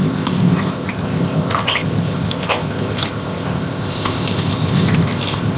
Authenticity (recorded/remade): remade